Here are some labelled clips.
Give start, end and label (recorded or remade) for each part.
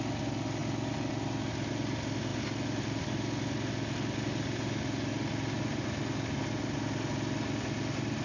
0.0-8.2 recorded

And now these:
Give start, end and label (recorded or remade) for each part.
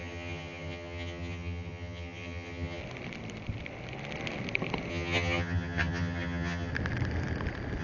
0.0-2.8 remade; 2.8-4.9 recorded; 4.9-6.7 remade; 6.7-7.8 recorded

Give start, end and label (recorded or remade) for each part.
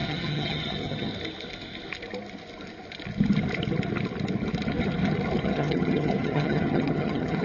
0.0-1.1 remade; 1.1-5.4 recorded; 5.4-7.4 remade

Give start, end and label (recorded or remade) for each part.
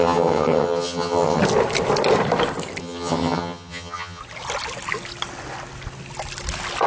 0.0-1.4 remade; 1.4-2.8 recorded; 2.8-4.2 remade; 4.2-6.9 recorded